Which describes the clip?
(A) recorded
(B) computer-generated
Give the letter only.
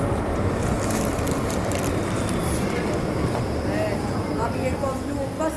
A